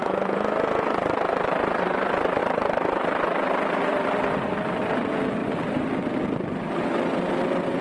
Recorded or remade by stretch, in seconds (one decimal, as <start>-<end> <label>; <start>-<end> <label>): 0.0-7.8 remade